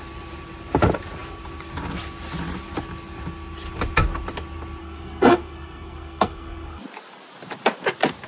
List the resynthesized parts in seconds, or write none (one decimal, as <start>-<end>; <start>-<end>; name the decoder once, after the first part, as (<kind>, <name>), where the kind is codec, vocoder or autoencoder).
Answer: 4.8-6.8 (codec, SNAC)